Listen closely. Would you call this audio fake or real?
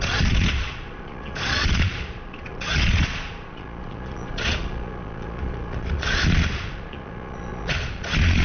fake